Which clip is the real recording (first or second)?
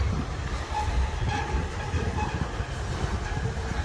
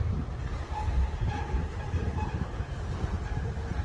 first